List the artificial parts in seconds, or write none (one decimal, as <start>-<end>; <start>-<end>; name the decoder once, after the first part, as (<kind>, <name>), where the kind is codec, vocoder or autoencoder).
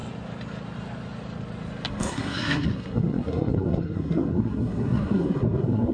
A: 1.9-5.9 (codec, SNAC)